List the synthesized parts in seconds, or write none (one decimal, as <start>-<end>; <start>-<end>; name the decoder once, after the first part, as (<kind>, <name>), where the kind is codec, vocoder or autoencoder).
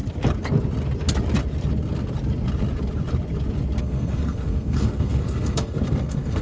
3.8-6.4 (codec, SNAC)